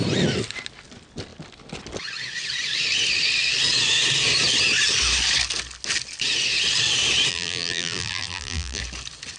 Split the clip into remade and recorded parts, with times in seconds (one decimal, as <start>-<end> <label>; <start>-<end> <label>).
0.0-7.3 recorded; 7.3-8.8 remade; 8.8-9.4 recorded